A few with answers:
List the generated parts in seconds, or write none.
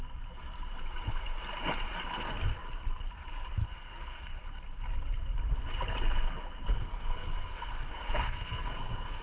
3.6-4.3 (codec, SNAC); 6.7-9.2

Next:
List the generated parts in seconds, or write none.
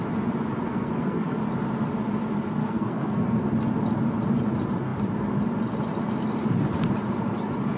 0.7-1.4 (codec, SNAC); 2.6-3.4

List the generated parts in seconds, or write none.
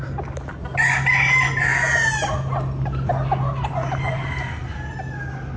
none